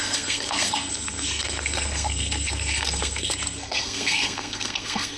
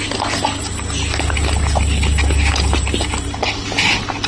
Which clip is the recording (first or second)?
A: second